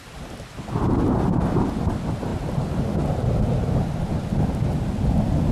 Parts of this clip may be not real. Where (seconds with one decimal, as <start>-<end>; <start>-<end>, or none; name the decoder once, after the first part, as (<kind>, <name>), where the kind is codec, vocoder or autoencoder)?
none